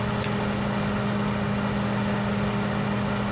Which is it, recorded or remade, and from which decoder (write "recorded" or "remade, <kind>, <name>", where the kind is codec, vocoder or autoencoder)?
recorded